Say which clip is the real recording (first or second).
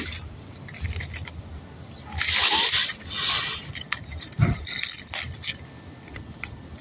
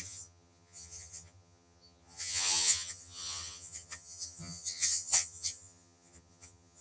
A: first